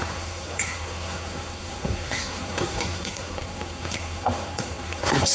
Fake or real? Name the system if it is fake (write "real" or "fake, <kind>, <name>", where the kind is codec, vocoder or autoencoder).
fake, codec, SNAC